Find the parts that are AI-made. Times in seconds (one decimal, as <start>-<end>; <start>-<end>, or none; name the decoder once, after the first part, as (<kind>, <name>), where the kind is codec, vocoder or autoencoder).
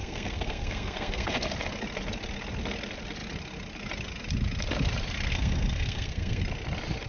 0.0-1.5 (codec, SNAC); 5.3-6.4